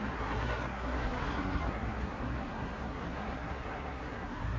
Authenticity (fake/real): fake